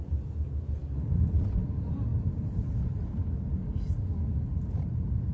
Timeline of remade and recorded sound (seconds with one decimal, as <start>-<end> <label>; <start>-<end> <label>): 0.0-5.3 recorded